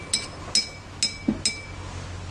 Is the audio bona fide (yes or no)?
yes